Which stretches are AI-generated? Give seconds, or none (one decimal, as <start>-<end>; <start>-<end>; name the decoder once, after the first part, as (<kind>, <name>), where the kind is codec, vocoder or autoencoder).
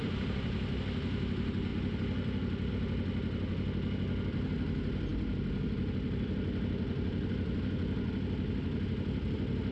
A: none